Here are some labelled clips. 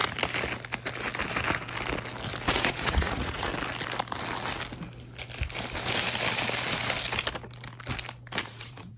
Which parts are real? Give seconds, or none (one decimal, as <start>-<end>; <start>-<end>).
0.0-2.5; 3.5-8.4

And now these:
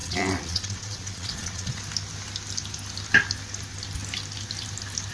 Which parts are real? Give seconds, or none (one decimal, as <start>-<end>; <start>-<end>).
1.8-5.1

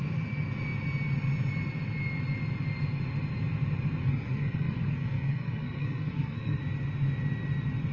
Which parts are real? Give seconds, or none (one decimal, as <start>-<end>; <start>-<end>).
0.0-4.0; 6.6-7.9

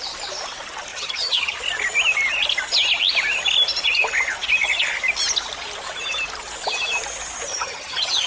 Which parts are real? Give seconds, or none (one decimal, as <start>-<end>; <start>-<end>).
0.0-0.9; 1.6-7.5

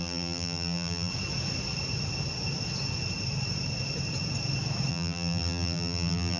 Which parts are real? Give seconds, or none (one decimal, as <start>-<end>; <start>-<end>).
1.1-4.9

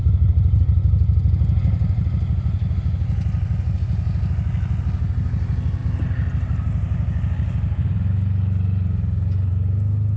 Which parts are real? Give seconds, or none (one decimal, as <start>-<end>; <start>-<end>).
0.0-10.2

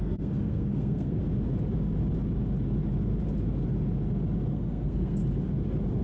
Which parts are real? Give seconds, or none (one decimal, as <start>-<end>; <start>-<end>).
1.2-4.5; 5.2-6.0